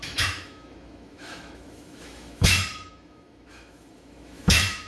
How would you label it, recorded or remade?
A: remade